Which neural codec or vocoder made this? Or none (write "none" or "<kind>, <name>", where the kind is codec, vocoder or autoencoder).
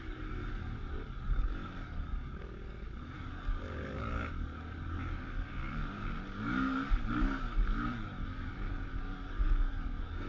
codec, DAC